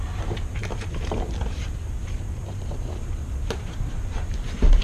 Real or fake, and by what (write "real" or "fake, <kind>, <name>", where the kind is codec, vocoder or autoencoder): fake, vocoder, BigVGAN v2